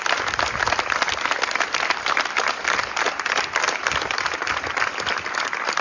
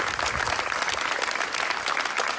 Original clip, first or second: second